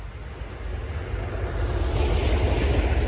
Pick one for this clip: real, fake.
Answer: real